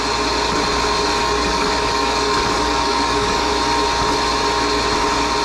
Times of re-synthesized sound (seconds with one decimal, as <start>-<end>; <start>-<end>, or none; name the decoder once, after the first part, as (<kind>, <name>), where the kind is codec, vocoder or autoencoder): 1.2-3.5 (codec, DAC)